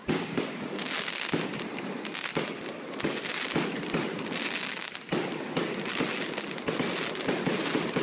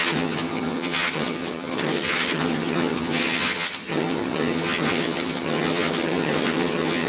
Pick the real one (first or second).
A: first